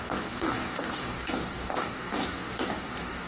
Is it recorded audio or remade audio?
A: remade